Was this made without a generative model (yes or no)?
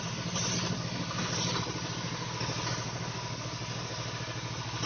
yes